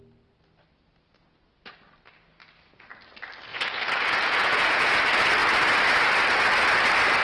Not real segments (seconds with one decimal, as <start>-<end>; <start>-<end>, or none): 3.5-4.9